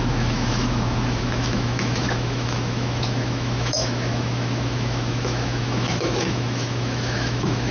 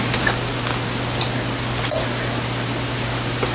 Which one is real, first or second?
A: second